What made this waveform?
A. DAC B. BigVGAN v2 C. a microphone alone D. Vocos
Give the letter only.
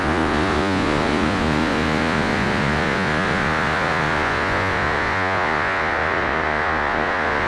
D